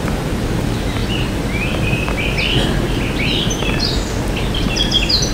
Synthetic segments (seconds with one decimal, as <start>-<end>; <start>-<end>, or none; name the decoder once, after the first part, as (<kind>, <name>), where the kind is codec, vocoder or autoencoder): none